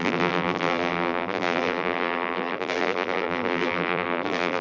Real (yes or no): no